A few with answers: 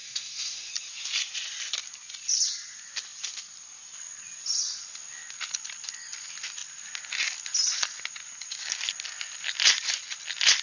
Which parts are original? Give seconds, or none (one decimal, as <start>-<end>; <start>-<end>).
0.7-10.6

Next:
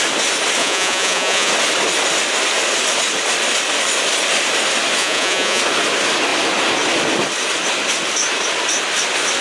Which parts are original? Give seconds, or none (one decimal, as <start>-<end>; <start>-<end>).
0.0-0.6; 1.5-5.0; 5.6-9.4

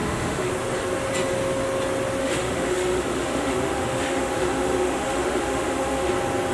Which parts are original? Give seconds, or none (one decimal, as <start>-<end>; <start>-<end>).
0.5-2.2; 6.1-6.5

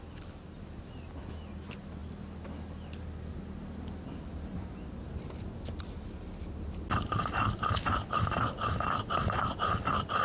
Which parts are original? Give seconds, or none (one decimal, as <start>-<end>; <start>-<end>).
0.0-10.2